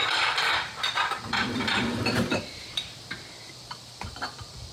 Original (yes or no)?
no